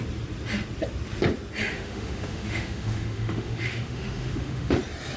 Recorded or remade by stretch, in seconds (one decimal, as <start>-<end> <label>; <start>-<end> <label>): 0.0-1.7 recorded; 1.7-4.8 remade; 4.8-5.2 recorded